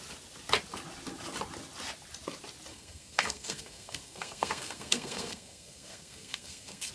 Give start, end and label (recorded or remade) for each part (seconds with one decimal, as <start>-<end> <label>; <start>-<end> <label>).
0.0-2.7 recorded; 2.7-6.9 remade